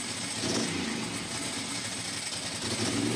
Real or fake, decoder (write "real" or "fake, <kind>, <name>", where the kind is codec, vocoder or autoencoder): real